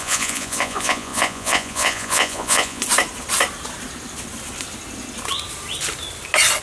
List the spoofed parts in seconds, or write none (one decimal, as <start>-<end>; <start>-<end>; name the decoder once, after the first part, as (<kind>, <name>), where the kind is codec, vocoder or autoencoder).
0.0-2.8 (vocoder, Vocos)